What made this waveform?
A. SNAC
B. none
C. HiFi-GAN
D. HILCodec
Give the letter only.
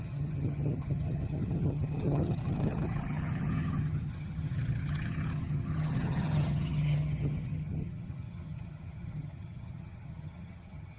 C